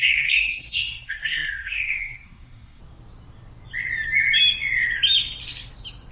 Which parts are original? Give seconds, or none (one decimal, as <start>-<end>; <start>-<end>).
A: 2.8-6.1

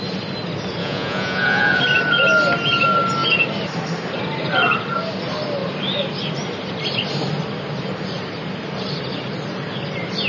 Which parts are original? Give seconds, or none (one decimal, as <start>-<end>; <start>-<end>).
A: 0.0-0.8; 1.8-10.3